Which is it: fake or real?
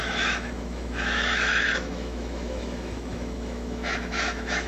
fake